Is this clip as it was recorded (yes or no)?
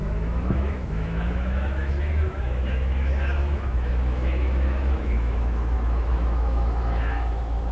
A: no